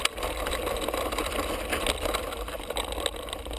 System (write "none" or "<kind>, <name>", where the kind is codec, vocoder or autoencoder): none